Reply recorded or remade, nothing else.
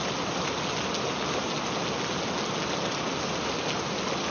recorded